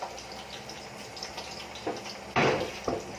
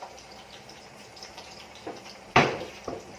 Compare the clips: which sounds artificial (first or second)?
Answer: second